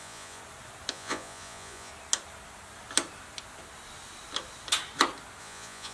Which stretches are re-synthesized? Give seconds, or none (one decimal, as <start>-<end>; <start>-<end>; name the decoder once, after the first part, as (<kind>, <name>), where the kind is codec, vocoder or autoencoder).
0.0-0.4 (vocoder, Vocos); 0.9-1.9; 5.4-5.9